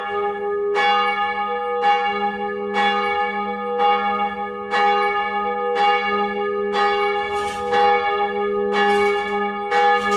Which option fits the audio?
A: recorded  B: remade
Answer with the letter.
A